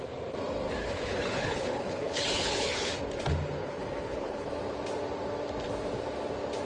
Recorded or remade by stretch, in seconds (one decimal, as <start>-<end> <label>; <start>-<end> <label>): 0.0-0.8 recorded; 0.8-2.9 remade; 2.9-3.6 recorded; 3.6-4.5 remade; 4.5-6.7 recorded